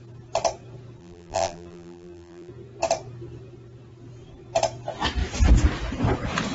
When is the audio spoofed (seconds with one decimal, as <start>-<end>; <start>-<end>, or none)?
1.0-2.5

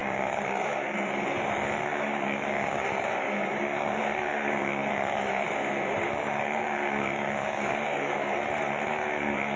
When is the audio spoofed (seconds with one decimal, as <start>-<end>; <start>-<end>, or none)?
0.0-8.3; 9.1-9.6

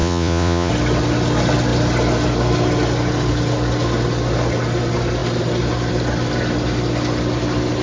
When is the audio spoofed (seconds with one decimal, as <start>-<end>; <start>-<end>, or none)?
0.0-0.7